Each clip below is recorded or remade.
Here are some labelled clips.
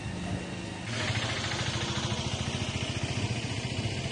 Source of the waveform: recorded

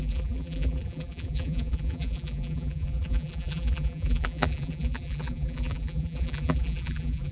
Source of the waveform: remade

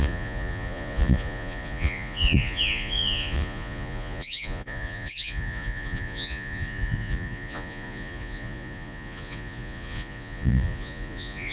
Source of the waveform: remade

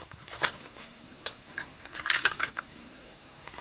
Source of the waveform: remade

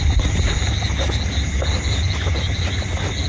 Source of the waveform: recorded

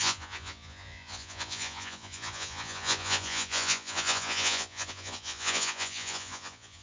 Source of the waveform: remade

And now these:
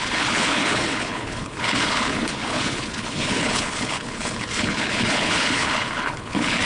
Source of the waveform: remade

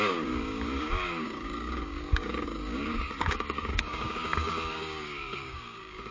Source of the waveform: remade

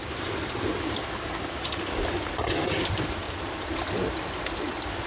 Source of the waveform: recorded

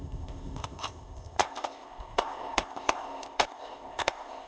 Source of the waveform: remade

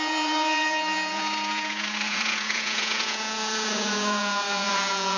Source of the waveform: remade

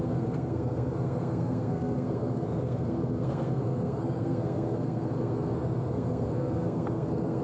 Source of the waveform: remade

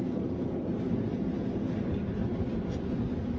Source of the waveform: recorded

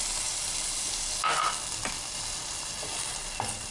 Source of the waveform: recorded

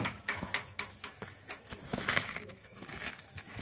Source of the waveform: remade